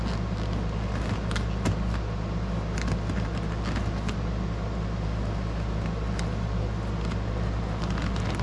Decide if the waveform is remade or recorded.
recorded